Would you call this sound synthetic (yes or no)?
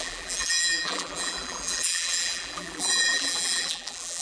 yes